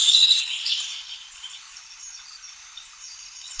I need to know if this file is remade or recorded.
remade